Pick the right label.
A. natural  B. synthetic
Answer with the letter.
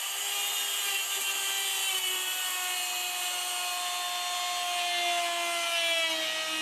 A